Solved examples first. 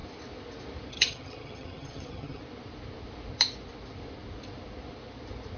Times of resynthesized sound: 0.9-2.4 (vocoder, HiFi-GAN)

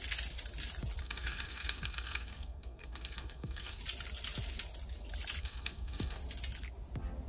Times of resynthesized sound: 1.0-3.8 (codec, SNAC); 5.4-6.2